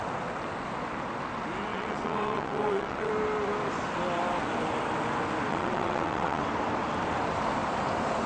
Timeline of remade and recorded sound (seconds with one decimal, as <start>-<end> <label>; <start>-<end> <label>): 0.0-1.7 recorded; 1.7-3.1 remade; 3.1-5.5 recorded; 5.5-6.4 remade; 6.4-8.3 recorded